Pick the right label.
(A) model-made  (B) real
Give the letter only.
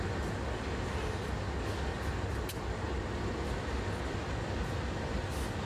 B